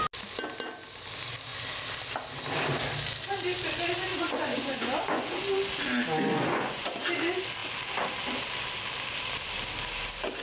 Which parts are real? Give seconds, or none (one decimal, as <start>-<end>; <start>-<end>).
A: 0.0-4.1; 5.4-6.3; 6.9-10.4